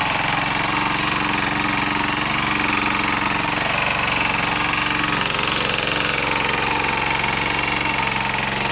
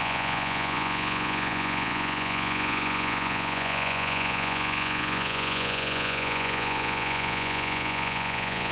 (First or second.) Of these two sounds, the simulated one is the second